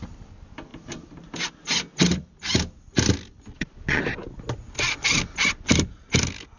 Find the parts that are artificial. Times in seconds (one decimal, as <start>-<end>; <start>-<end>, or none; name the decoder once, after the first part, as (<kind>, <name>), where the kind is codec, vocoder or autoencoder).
3.5-4.0 (vocoder, Vocos)